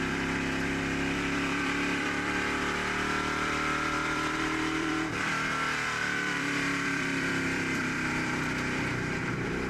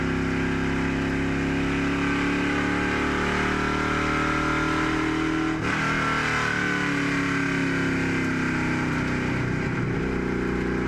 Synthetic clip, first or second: first